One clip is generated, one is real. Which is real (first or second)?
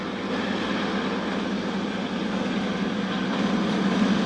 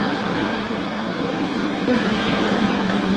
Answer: first